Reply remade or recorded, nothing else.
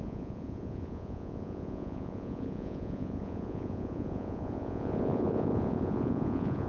remade